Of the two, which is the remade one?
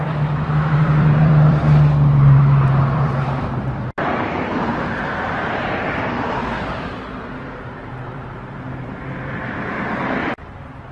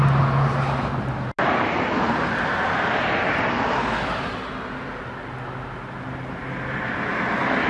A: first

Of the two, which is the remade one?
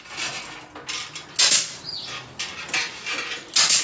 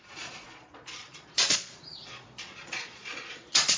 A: second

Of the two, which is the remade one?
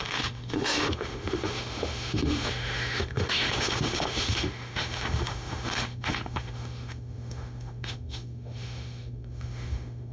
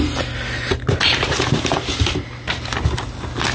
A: first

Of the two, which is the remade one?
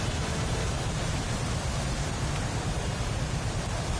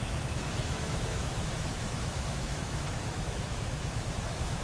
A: second